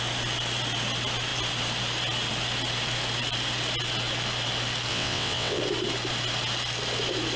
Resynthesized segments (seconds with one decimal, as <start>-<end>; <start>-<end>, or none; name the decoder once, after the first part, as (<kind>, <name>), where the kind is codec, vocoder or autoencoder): 4.9-5.6 (vocoder, WaveNeXt)